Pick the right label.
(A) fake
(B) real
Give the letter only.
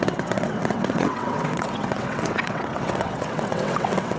A